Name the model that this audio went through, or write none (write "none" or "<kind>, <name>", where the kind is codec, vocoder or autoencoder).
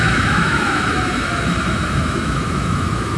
autoencoder, DAC-VAE